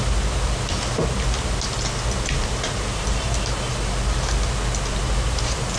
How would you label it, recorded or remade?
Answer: recorded